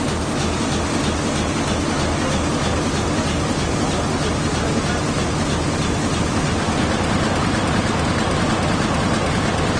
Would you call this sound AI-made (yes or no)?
no